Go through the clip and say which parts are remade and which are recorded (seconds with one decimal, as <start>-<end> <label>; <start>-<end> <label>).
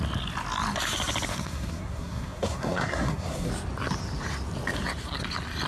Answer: 0.0-1.3 recorded; 1.3-3.5 remade; 3.5-5.7 recorded